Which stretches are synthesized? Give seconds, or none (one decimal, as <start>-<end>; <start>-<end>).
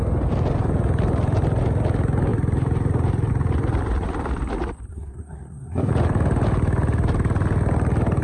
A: 4.9-5.9